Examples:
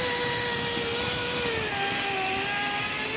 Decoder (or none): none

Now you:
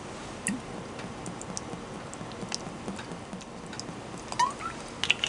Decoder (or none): none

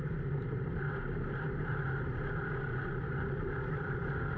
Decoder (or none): vocoder, BigVGAN v2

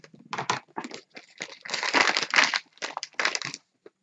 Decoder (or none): vocoder, BigVGAN v2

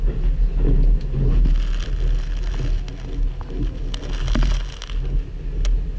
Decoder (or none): none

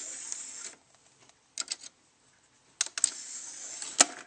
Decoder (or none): none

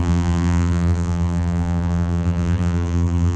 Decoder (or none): vocoder, BigVGAN v2